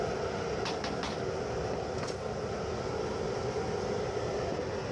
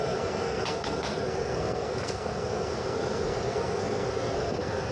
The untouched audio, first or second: first